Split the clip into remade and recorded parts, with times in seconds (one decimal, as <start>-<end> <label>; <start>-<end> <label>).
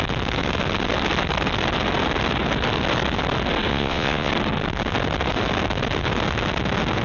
0.0-3.7 recorded; 3.7-4.3 remade; 4.3-7.0 recorded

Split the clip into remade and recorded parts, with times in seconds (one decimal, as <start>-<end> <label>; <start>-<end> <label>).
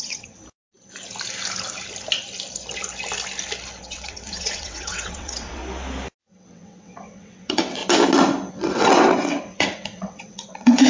0.0-0.4 remade; 0.4-3.8 recorded; 3.8-5.6 remade; 5.6-6.2 recorded; 6.2-7.8 remade; 7.8-8.5 recorded; 8.5-10.9 remade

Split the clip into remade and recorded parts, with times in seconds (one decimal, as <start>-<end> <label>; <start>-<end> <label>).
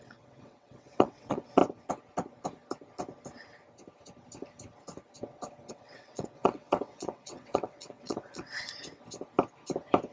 0.0-1.6 remade; 1.6-5.7 recorded; 5.7-8.7 remade; 8.7-10.1 recorded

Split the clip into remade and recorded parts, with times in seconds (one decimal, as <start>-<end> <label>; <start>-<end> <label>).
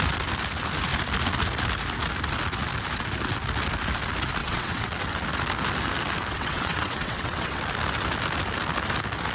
0.0-4.4 recorded; 4.4-4.9 remade; 4.9-6.3 recorded; 6.3-7.6 remade; 7.6-9.3 recorded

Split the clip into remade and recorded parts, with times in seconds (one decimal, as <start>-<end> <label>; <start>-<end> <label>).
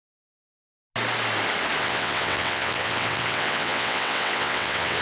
0.0-1.8 recorded; 1.8-5.0 remade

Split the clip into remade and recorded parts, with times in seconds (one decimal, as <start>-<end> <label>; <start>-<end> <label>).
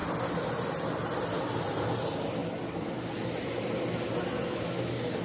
0.0-5.2 recorded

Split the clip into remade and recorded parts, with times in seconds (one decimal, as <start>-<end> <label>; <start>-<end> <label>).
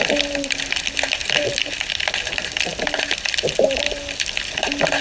0.0-5.0 recorded